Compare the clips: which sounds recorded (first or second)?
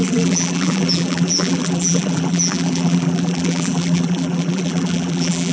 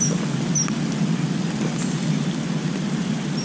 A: second